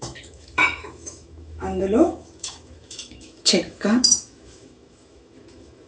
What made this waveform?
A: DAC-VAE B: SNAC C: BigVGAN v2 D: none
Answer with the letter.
A